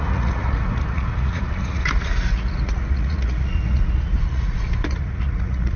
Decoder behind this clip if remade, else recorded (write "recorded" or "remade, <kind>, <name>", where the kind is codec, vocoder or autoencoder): remade, vocoder, Vocos